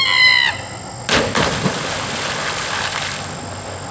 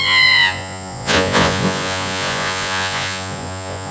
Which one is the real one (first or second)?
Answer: first